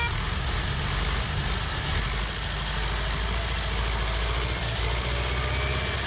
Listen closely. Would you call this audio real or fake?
real